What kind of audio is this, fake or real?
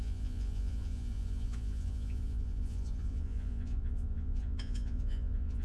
fake